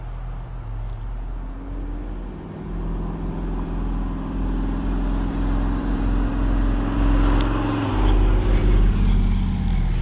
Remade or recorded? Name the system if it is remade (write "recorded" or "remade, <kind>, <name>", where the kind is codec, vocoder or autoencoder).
recorded